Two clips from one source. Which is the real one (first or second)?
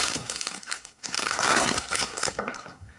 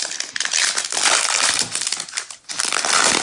second